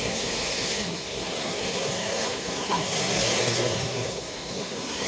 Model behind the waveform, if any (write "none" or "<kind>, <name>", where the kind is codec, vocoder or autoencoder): codec, SNAC